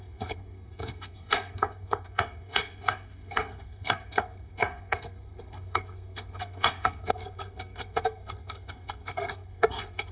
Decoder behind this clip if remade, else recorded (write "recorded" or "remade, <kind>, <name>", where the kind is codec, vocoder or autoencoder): remade, codec, SNAC